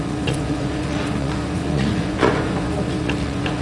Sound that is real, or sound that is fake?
fake